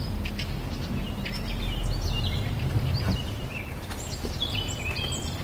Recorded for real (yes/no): yes